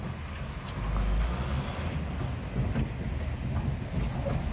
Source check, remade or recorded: recorded